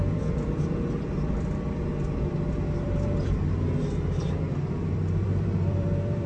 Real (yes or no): no